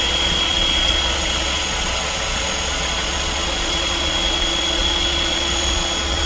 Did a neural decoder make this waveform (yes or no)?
yes